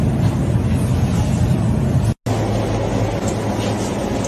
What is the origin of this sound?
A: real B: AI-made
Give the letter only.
A